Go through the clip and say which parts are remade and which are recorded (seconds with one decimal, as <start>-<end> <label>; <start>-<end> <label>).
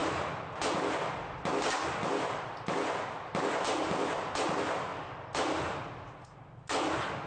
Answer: 0.0-7.3 recorded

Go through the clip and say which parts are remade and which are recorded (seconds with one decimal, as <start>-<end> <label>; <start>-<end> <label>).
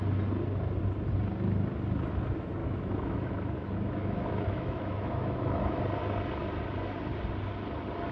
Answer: 0.0-2.6 recorded; 2.6-5.8 remade; 5.8-8.1 recorded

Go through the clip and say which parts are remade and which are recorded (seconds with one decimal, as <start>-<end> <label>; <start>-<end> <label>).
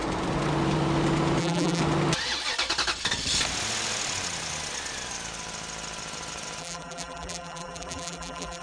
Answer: 0.0-1.4 recorded; 1.4-1.8 remade; 1.8-6.6 recorded; 6.6-8.6 remade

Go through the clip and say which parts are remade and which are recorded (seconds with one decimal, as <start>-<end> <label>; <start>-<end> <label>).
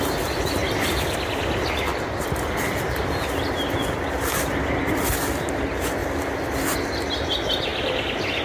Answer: 0.0-8.4 recorded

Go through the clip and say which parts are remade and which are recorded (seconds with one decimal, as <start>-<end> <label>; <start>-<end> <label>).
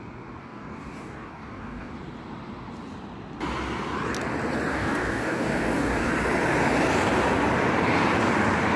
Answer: 0.0-0.4 recorded; 0.4-1.9 remade; 1.9-4.7 recorded; 4.7-6.1 remade; 6.1-8.8 recorded